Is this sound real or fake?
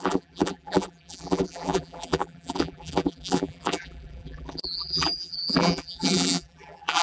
fake